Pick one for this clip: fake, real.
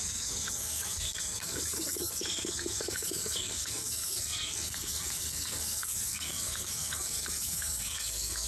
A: fake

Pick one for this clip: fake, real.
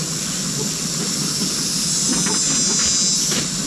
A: real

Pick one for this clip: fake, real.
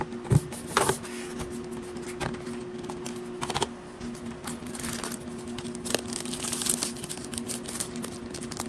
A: real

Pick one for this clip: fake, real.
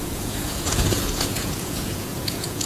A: fake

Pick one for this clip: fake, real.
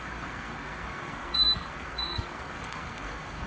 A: fake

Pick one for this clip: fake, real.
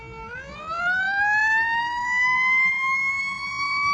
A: real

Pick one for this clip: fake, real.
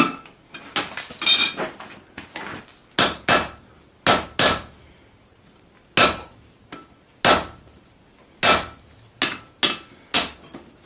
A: real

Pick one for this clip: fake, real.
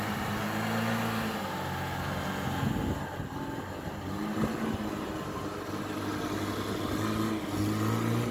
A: real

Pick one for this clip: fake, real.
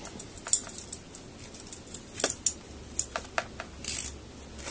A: real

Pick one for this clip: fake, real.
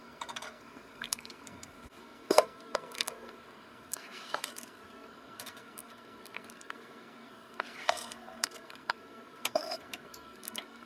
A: fake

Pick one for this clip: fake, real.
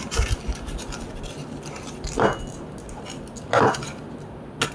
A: real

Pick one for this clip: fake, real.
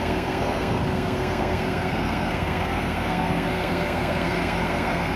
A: fake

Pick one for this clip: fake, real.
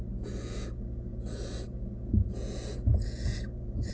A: fake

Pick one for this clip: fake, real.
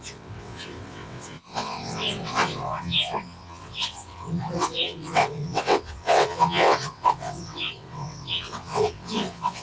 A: fake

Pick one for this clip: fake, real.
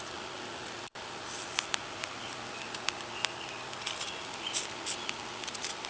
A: real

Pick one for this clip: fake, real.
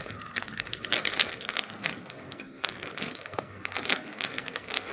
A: fake